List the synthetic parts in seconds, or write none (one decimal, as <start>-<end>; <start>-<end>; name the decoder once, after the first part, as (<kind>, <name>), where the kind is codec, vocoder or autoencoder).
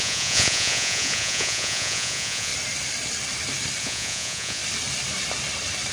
0.0-2.5 (vocoder, Vocos); 3.8-4.6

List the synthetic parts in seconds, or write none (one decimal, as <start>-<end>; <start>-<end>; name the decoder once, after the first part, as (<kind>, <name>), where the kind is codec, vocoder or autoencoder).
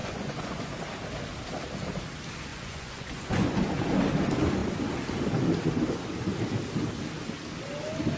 0.0-0.7 (vocoder, Vocos); 2.5-3.6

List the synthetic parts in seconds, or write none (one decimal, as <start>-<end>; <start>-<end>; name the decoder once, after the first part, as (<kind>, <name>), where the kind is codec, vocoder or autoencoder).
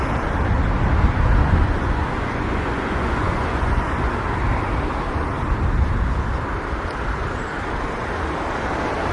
1.4-4.1 (vocoder, Vocos)